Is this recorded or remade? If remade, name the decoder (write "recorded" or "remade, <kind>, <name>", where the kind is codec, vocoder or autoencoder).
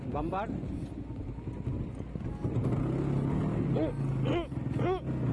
recorded